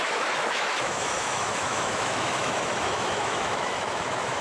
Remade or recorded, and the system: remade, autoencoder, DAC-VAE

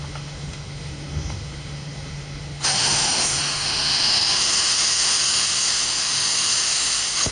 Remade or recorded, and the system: remade, autoencoder, DAC-VAE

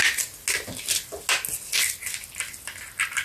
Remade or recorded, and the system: recorded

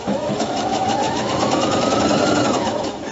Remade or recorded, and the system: remade, autoencoder, DAC-VAE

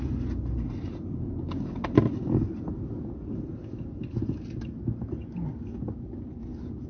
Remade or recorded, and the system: recorded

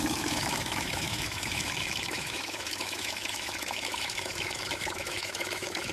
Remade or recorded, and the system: remade, autoencoder, DAC-VAE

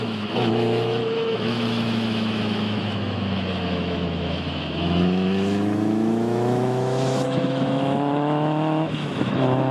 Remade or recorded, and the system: remade, autoencoder, DAC-VAE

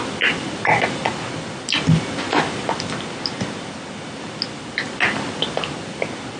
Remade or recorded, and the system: recorded